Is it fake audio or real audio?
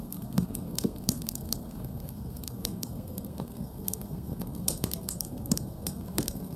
fake